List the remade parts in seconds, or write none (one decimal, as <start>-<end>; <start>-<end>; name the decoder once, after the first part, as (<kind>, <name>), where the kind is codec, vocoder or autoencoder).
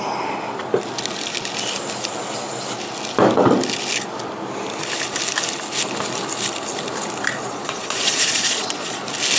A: 7.4-9.0 (vocoder, Vocos)